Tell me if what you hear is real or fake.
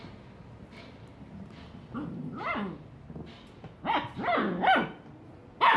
real